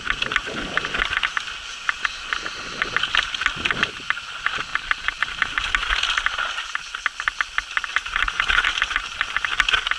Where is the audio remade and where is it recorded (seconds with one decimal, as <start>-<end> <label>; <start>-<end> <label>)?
0.0-4.7 recorded; 4.7-5.7 remade; 5.7-7.9 recorded; 7.9-9.5 remade; 9.5-10.0 recorded